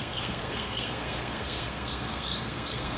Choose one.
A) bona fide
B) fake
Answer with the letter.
B